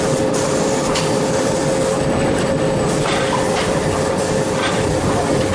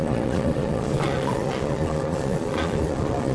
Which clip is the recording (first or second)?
first